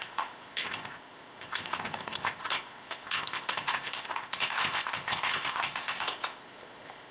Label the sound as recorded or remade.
remade